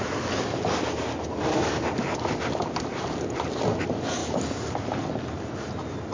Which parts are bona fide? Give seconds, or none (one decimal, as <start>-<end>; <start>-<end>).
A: 0.0-6.1